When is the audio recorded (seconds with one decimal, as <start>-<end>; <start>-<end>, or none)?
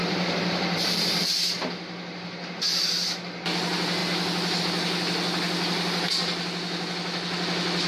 1.2-7.9